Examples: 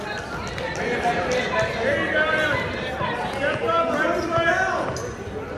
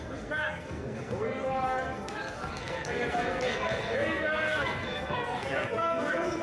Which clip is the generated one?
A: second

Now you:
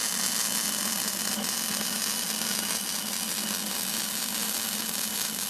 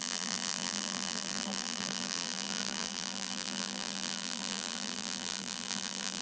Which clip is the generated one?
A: second